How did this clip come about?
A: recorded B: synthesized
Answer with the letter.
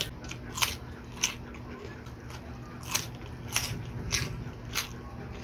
A